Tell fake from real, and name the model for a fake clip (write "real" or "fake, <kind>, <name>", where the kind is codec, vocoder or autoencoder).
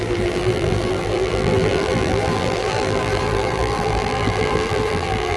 fake, vocoder, BigVGAN v2